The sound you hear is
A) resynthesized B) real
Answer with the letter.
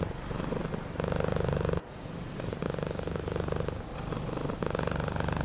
B